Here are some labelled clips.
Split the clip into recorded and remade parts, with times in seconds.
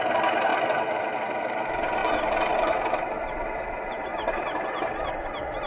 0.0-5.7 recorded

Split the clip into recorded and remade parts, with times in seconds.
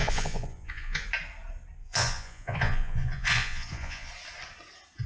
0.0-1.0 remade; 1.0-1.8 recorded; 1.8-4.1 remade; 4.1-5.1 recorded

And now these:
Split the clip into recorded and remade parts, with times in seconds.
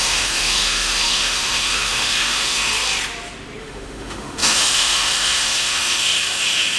0.0-2.7 remade; 2.7-3.6 recorded; 3.6-6.8 remade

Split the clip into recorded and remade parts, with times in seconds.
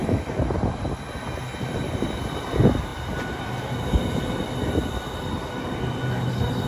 0.0-0.8 remade; 0.8-1.5 recorded; 1.5-2.2 remade; 2.2-6.7 recorded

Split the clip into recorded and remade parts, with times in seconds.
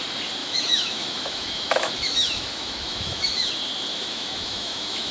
0.0-0.4 recorded; 0.4-3.5 remade; 3.5-3.9 recorded; 3.9-5.1 remade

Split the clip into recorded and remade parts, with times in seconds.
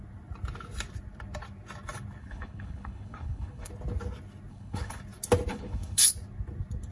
0.0-2.2 recorded; 2.2-3.7 remade; 3.7-4.5 recorded; 4.5-5.0 remade; 5.0-5.5 recorded; 5.5-6.1 remade; 6.1-6.9 recorded